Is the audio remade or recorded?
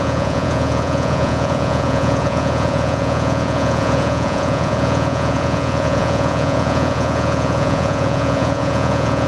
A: remade